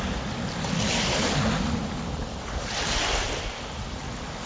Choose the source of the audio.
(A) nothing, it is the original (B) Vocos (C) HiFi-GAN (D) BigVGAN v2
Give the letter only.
A